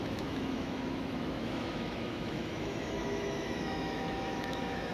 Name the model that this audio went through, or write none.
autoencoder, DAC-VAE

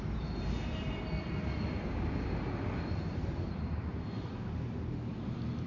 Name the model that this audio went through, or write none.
vocoder, BigVGAN v2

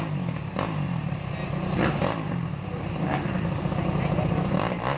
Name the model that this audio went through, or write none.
none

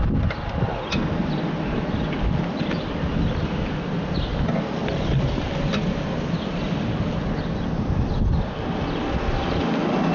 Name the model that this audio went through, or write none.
none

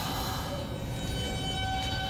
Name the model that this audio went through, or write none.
none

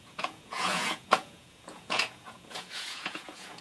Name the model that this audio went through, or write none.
vocoder, Vocos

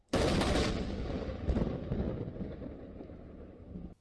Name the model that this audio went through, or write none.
none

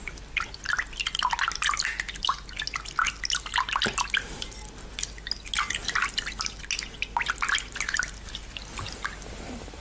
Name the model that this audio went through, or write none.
none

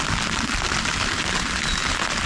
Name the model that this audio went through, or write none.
none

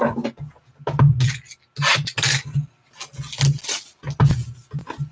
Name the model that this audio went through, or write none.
none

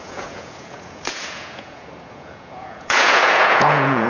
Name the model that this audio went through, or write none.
vocoder, Vocos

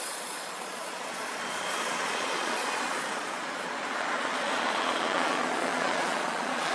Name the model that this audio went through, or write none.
vocoder, Vocos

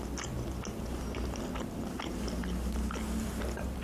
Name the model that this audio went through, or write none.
none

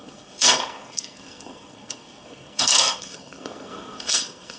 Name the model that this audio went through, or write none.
codec, SNAC